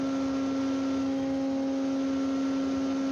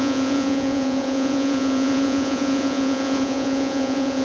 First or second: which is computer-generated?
second